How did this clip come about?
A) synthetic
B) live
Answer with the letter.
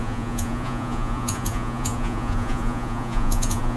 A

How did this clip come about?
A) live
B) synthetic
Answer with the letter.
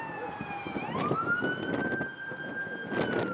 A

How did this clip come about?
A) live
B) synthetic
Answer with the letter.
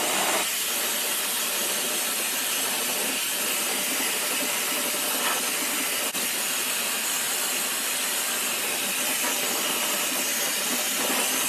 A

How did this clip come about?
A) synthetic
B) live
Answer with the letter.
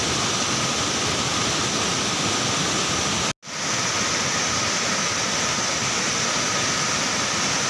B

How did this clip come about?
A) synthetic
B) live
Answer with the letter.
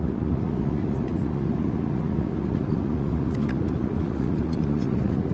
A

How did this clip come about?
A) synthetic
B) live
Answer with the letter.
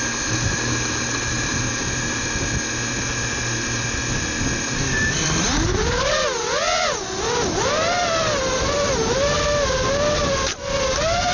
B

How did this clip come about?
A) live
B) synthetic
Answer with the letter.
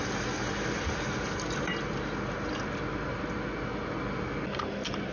A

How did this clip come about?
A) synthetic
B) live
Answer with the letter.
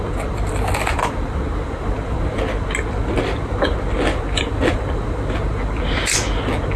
B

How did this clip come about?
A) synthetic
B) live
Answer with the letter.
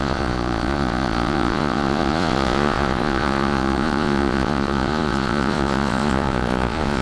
A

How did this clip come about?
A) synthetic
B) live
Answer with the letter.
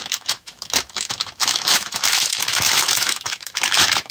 A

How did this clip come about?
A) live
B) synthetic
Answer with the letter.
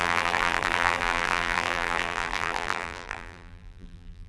B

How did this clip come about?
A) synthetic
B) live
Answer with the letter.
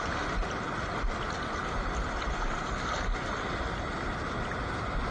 B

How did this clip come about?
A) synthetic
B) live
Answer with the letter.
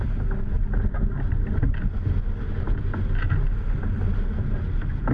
B